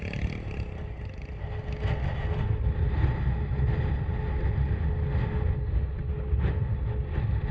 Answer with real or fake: real